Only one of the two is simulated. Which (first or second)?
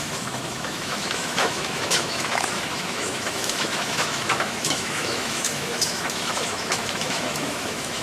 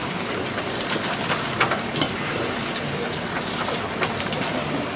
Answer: first